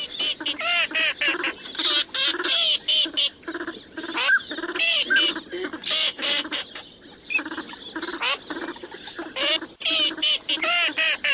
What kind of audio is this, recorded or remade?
recorded